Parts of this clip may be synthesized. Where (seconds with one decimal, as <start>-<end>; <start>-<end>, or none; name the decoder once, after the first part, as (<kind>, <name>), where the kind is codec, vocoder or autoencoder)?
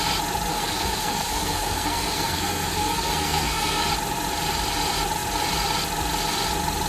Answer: 0.5-3.9 (codec, SNAC)